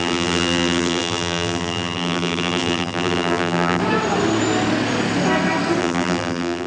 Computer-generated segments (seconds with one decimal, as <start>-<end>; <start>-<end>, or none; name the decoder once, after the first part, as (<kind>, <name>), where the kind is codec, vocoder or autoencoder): 0.0-3.8 (vocoder, BigVGAN v2); 5.8-6.7